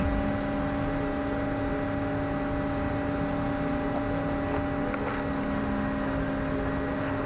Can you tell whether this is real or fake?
real